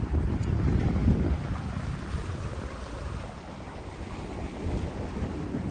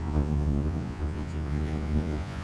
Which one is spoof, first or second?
second